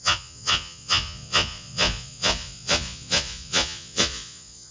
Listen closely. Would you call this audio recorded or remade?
remade